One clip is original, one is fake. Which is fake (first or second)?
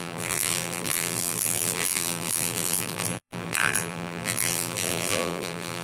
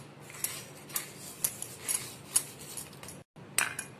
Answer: first